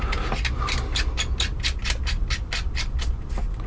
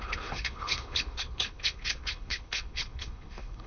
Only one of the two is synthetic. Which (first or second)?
second